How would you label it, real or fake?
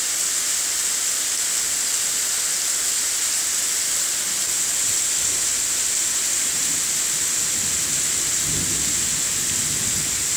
real